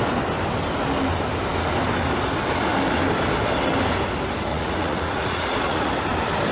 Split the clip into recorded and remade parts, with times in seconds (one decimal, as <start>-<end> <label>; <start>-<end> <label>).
0.0-4.5 recorded; 4.5-5.9 remade; 5.9-6.5 recorded